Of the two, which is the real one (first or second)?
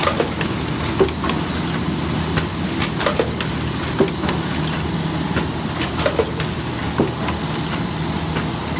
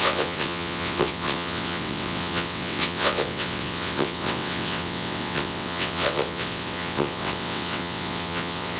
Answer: first